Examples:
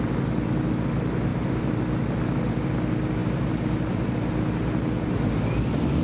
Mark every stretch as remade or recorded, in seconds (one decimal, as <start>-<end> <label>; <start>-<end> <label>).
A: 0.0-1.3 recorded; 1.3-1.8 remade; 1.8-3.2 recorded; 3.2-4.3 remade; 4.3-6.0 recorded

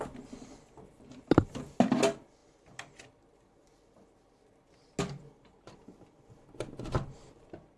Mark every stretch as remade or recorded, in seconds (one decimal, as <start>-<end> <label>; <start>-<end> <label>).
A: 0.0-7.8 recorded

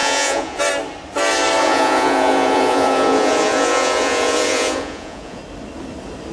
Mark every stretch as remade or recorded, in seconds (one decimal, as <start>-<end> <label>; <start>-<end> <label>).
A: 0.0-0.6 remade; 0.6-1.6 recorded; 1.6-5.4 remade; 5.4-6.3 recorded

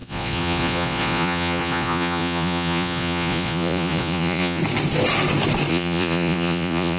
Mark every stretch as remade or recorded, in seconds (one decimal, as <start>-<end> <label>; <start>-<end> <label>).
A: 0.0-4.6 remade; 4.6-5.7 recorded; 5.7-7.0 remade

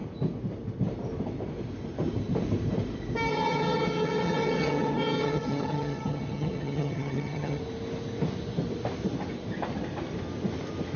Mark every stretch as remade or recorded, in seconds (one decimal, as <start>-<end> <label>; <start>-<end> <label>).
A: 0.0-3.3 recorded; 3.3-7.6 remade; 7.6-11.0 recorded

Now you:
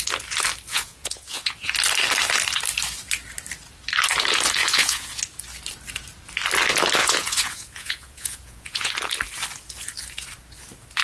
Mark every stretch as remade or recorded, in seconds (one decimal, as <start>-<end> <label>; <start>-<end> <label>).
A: 0.0-0.7 recorded; 0.7-1.7 remade; 1.7-4.6 recorded; 4.6-5.2 remade; 5.2-7.0 recorded; 7.0-8.9 remade; 8.9-11.0 recorded

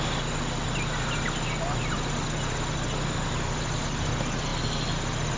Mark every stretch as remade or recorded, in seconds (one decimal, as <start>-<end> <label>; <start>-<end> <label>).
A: 0.0-5.4 recorded